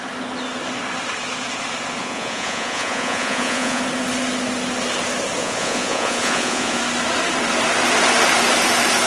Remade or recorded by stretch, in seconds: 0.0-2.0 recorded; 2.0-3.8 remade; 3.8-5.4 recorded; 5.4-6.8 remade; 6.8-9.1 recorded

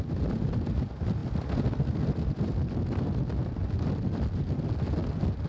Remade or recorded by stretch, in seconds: 0.0-5.5 recorded

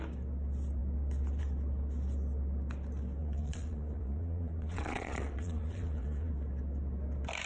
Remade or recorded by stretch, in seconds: 0.0-3.2 recorded; 3.2-6.3 remade; 6.3-7.5 recorded

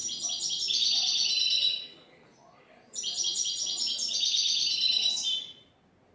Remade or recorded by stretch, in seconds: 0.0-6.1 recorded

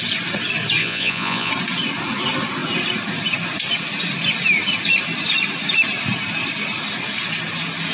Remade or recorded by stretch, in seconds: 0.0-0.8 recorded; 0.8-1.5 remade; 1.5-7.9 recorded

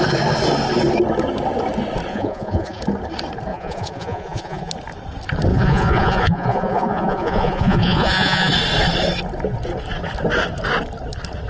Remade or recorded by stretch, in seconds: 0.0-2.1 recorded; 2.1-2.8 remade; 2.8-3.5 recorded; 3.5-4.7 remade; 4.7-5.5 recorded; 5.5-8.5 remade; 8.5-11.5 recorded

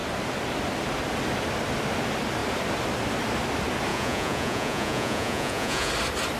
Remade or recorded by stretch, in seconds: 0.0-3.9 recorded; 3.9-5.9 remade; 5.9-6.4 recorded

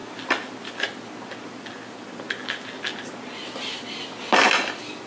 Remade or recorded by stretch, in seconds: 0.0-5.1 recorded